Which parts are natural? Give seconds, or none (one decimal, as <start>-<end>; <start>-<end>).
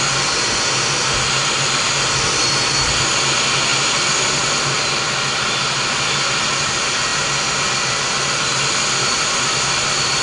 0.0-10.2